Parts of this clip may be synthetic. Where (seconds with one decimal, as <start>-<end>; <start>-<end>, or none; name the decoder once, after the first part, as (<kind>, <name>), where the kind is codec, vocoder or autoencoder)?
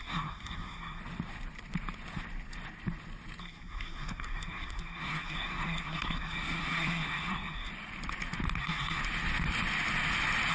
0.0-1.0 (codec, SNAC); 3.4-7.7; 8.6-9.0